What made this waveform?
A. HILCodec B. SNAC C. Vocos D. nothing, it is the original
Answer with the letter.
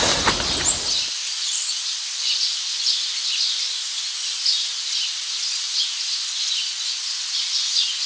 D